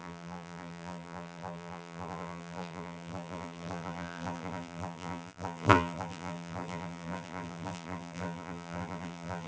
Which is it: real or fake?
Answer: fake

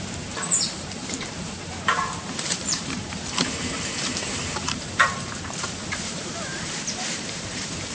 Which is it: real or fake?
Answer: fake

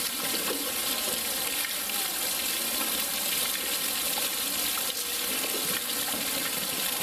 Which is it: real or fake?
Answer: real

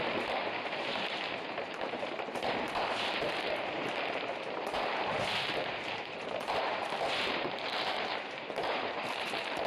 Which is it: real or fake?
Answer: fake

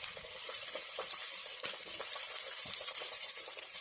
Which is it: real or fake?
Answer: fake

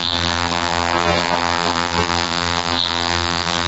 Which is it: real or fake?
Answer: fake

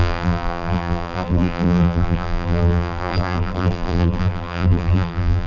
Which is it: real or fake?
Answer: fake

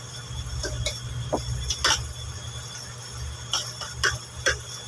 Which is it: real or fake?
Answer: real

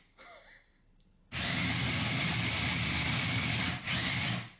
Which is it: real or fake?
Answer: real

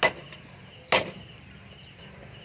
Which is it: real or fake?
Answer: real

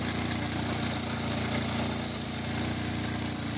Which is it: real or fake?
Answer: real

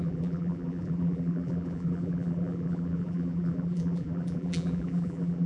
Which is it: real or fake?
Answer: fake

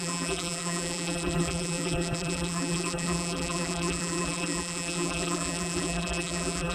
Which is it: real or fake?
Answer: fake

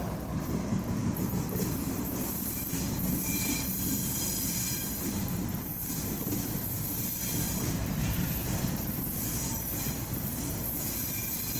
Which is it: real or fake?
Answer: fake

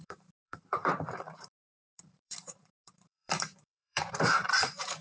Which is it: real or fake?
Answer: fake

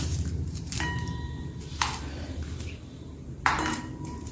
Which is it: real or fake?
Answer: fake